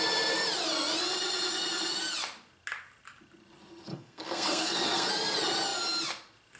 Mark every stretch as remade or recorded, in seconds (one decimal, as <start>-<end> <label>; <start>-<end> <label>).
0.0-3.9 recorded; 3.9-5.1 remade; 5.1-6.6 recorded